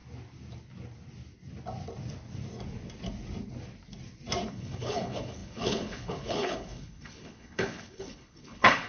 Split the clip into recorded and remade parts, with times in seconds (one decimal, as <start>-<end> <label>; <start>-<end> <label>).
0.0-4.5 recorded; 4.5-8.9 remade